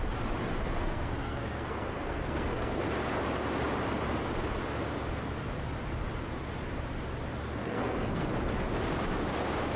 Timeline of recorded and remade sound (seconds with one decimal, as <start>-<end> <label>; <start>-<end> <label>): 0.0-0.8 recorded; 0.8-2.8 remade; 2.8-7.6 recorded; 7.6-8.3 remade; 8.3-9.8 recorded